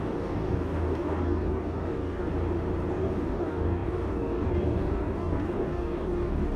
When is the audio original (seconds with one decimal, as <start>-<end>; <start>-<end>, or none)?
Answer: 2.3-2.9